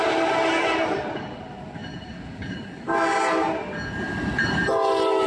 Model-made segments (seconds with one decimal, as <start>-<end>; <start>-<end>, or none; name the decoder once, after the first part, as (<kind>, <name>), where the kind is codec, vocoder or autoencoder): 0.0-1.8 (vocoder, BigVGAN v2); 4.4-5.3